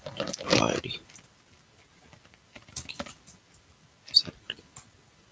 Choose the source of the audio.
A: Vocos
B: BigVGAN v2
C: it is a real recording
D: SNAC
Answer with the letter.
C